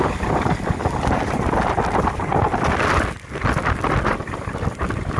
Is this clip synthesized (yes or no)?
no